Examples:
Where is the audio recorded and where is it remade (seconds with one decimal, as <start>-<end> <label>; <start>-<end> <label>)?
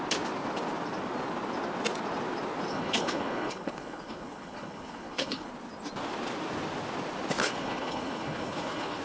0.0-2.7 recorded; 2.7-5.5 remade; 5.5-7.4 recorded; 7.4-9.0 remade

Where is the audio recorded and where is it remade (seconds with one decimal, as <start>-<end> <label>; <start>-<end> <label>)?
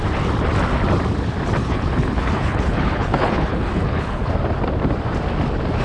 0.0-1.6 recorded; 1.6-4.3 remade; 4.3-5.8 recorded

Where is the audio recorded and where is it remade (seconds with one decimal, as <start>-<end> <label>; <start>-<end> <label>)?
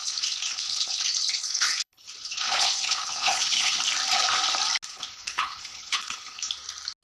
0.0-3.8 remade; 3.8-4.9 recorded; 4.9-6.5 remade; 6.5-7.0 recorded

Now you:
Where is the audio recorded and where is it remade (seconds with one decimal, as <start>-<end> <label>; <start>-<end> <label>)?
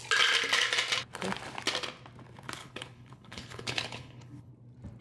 0.0-2.6 recorded; 2.6-4.5 remade; 4.5-5.0 recorded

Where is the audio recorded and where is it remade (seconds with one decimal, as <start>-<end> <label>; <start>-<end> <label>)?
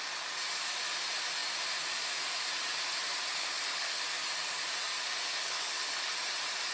0.0-3.3 recorded; 3.3-4.0 remade; 4.0-5.4 recorded; 5.4-6.1 remade; 6.1-6.7 recorded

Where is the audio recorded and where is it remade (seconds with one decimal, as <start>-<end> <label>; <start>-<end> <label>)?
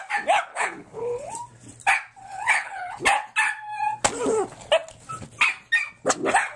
0.0-0.5 recorded; 0.5-1.3 remade; 1.3-2.2 recorded; 2.2-3.0 remade; 3.0-6.6 recorded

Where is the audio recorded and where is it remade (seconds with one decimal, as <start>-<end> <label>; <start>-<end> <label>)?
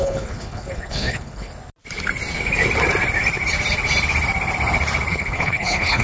0.0-1.5 remade; 1.5-5.1 recorded; 5.1-6.0 remade